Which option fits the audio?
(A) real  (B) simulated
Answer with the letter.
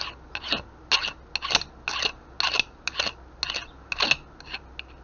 A